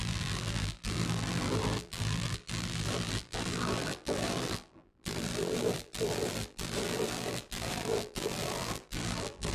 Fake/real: fake